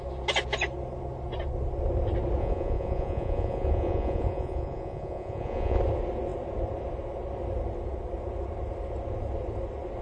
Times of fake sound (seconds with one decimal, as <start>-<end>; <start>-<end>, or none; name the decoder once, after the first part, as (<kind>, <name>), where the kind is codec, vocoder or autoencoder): 2.4-5.8 (vocoder, Vocos)